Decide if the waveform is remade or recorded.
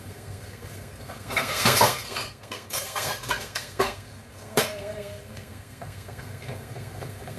remade